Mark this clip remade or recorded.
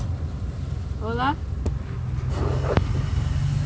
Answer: recorded